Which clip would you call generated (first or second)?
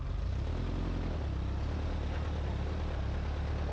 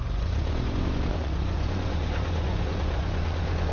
second